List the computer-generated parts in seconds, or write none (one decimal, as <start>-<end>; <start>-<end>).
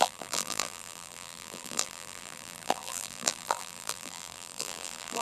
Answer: 0.0-5.2